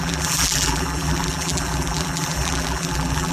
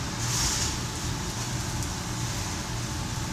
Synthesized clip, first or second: first